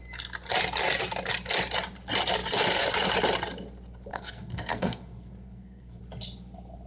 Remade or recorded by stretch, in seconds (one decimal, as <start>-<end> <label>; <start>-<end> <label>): 0.0-4.1 recorded; 4.1-6.0 remade; 6.0-6.9 recorded